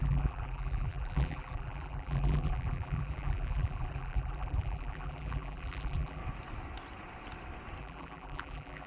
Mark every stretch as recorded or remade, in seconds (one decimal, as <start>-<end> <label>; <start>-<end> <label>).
0.0-6.2 remade; 6.2-7.8 recorded; 7.8-8.9 remade